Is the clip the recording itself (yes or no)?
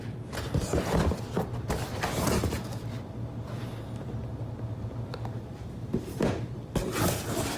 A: yes